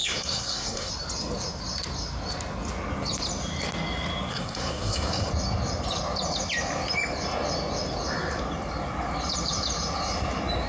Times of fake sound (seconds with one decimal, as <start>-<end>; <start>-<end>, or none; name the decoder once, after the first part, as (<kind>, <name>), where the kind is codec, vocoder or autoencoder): 0.0-0.9 (codec, SNAC); 4.3-5.3